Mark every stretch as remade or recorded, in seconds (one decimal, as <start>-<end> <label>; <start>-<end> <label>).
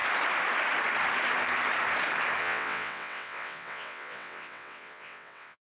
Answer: 0.0-2.4 recorded; 2.4-5.6 remade